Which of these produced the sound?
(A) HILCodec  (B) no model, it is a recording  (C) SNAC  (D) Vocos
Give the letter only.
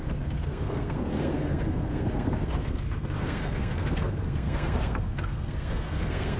C